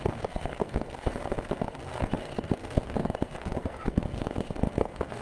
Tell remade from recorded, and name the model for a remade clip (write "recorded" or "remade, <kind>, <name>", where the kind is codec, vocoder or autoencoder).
remade, codec, SNAC